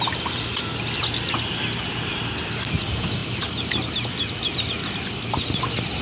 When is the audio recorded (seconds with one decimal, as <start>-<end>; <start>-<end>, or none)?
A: 0.0-6.0